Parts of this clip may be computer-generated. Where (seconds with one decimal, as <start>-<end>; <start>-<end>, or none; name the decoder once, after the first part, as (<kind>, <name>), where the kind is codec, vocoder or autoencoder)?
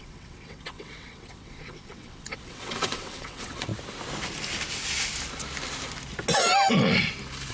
0.0-3.7 (vocoder, WaveNeXt)